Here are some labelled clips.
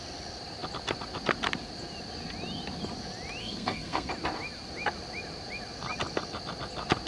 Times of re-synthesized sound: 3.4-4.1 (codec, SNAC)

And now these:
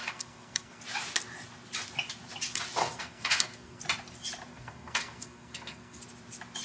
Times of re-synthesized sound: 0.0-0.8 (codec, SNAC); 2.8-3.8; 4.5-6.0

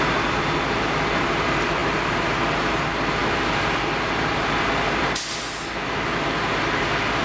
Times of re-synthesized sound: none

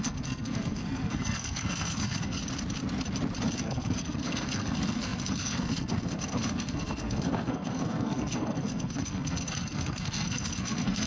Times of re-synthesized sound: 0.0-2.4 (codec, SNAC); 3.6-11.1

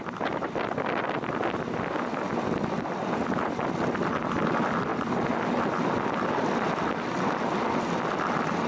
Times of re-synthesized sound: none

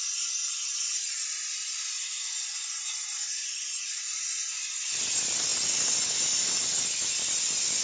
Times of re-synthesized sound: none

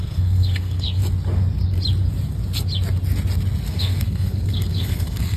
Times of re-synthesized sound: 0.0-1.0 (codec, SNAC); 3.7-5.4

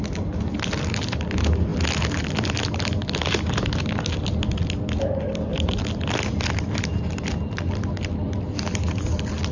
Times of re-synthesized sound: none